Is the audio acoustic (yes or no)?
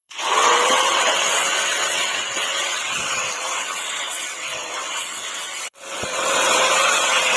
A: no